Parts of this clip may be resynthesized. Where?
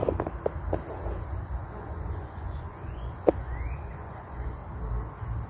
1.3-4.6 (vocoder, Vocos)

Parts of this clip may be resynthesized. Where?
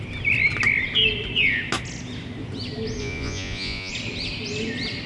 3.0-3.9 (vocoder, Vocos)